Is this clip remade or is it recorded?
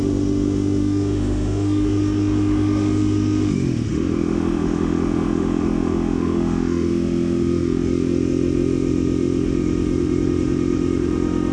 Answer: remade